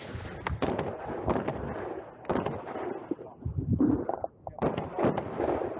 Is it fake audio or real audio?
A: real